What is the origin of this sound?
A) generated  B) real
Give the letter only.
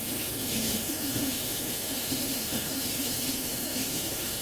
A